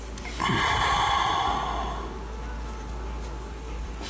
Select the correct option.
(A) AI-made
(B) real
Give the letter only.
B